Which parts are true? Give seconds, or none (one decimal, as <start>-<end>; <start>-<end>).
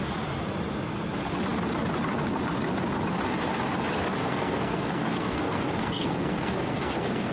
0.0-4.2